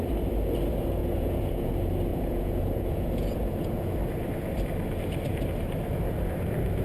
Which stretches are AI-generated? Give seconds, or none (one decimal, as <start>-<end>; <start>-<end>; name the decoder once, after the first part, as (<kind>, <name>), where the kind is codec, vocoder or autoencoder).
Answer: 1.0-1.7 (vocoder, Vocos); 2.1-3.9